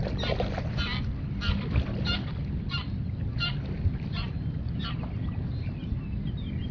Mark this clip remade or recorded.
recorded